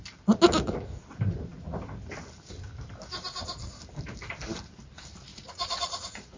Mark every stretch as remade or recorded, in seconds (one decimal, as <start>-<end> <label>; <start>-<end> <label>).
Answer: 0.0-5.3 recorded; 5.3-6.4 remade

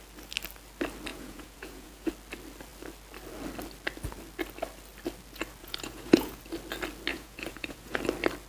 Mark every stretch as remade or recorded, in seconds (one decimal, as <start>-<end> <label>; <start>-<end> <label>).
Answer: 0.0-1.1 recorded; 1.1-2.1 remade; 2.1-5.6 recorded; 5.6-6.4 remade; 6.4-7.1 recorded; 7.1-8.0 remade; 8.0-8.5 recorded

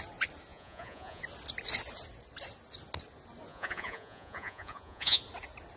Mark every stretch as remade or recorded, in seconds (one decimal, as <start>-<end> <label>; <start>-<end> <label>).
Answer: 0.0-0.5 recorded; 0.5-1.2 remade; 1.2-3.5 recorded; 3.5-5.2 remade; 5.2-5.8 recorded

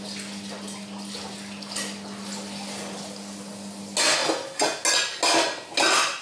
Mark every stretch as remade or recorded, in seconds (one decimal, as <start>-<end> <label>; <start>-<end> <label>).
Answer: 0.0-6.2 recorded

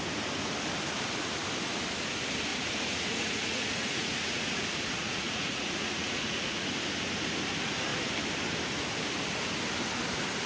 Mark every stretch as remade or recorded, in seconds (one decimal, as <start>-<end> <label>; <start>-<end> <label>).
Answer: 0.0-2.5 recorded; 2.5-6.7 remade; 6.7-10.5 recorded

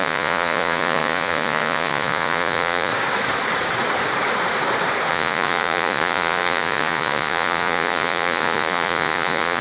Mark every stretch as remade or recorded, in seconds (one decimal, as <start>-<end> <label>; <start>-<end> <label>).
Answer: 0.0-2.9 remade; 2.9-5.1 recorded; 5.1-9.6 remade

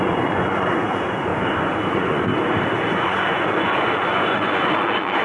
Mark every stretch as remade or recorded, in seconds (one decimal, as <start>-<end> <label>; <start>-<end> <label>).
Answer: 0.0-1.3 remade; 1.3-1.9 recorded; 1.9-2.3 remade; 2.3-3.0 recorded; 3.0-5.2 remade

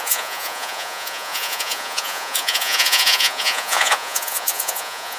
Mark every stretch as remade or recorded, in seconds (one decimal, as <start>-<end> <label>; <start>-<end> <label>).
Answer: 0.0-5.2 remade